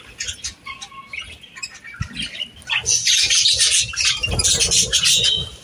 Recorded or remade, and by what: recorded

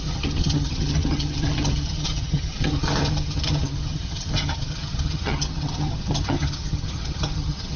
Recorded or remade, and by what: remade, vocoder, HiFi-GAN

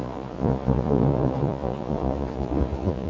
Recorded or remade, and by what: remade, vocoder, Vocos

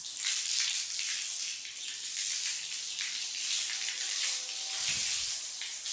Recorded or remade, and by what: recorded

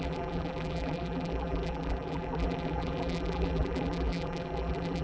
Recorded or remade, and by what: remade, vocoder, BigVGAN v2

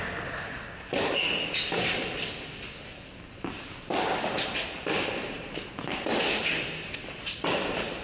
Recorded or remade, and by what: recorded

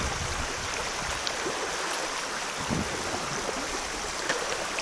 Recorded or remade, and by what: recorded